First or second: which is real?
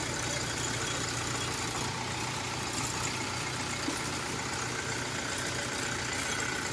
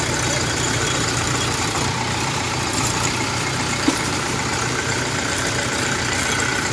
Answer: first